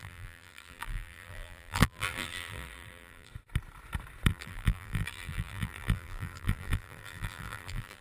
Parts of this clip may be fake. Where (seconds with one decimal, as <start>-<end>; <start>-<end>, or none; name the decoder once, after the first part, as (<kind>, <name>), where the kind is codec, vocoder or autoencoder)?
0.0-3.3 (vocoder, BigVGAN v2); 4.3-8.0